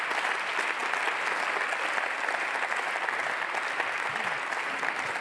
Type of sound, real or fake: real